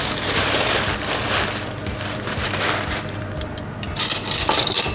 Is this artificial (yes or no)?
no